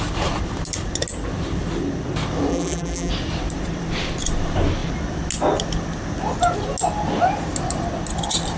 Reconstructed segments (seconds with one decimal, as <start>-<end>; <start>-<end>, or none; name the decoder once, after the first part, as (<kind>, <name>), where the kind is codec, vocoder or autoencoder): 2.5-3.1 (vocoder, BigVGAN v2)